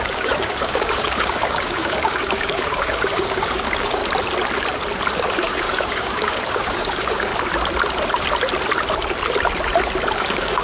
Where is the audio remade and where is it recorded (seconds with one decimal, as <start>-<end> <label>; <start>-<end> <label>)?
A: 0.0-4.0 remade; 4.0-5.1 recorded; 5.1-7.3 remade; 7.3-10.2 recorded; 10.2-10.6 remade